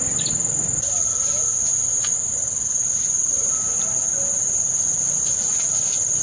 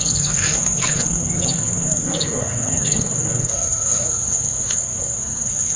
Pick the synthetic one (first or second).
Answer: second